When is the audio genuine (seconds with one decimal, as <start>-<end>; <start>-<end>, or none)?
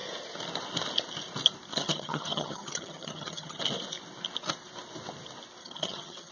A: 0.0-1.7; 3.6-5.6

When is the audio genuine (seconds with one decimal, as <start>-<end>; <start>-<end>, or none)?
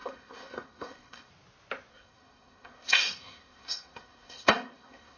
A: 1.3-1.9